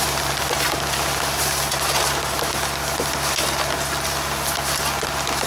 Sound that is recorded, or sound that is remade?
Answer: recorded